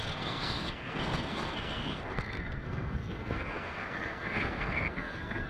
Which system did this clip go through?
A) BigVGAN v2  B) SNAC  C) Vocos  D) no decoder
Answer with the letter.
B